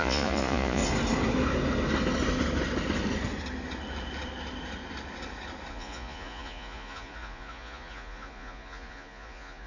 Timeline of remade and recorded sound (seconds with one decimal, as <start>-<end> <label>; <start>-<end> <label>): 0.0-0.8 remade; 0.8-5.7 recorded; 5.7-9.7 remade